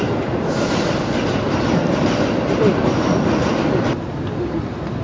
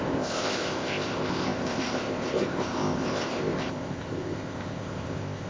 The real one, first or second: first